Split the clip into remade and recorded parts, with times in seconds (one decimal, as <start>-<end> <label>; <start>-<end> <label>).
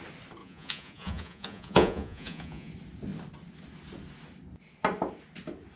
0.0-0.4 recorded; 0.4-2.7 remade; 2.7-5.8 recorded